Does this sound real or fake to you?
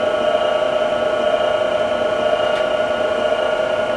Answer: real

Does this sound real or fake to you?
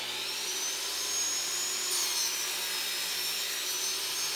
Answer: real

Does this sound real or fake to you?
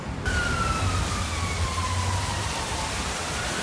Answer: real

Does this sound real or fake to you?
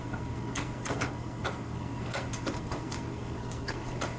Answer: fake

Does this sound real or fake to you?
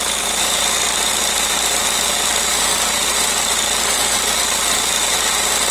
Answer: real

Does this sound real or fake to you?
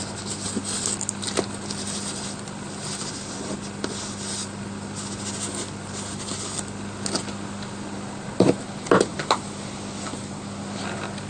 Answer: real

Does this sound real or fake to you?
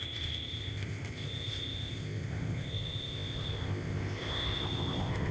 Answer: fake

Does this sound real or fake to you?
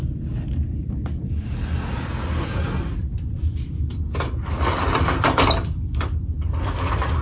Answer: real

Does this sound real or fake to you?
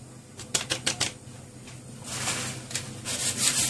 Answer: fake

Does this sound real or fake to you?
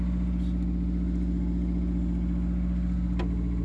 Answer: real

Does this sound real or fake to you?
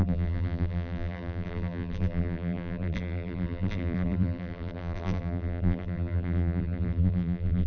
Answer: fake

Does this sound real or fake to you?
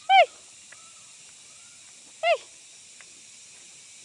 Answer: real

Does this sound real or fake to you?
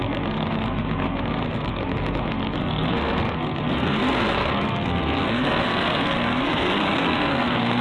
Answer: fake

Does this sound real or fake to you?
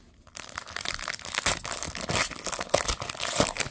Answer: real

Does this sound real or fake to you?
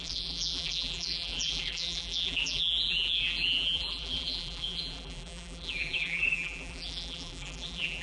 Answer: fake